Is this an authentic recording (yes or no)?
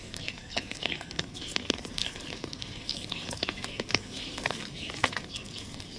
no